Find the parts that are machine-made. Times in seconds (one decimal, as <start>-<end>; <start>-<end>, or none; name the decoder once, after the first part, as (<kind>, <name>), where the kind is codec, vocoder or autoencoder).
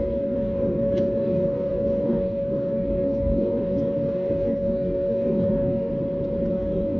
0.0-5.9 (codec, DAC); 6.5-7.0